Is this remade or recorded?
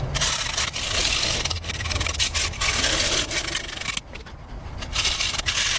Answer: recorded